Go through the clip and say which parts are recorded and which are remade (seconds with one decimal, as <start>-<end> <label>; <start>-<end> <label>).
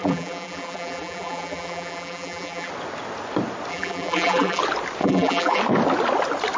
0.0-2.7 remade; 2.7-3.7 recorded; 3.7-4.6 remade; 4.6-5.0 recorded; 5.0-5.6 remade; 5.6-6.6 recorded